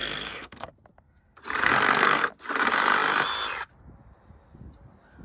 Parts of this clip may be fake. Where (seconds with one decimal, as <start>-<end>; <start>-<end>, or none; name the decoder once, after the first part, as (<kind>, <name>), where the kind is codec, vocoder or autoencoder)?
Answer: 0.0-0.7 (codec, SNAC); 1.6-2.3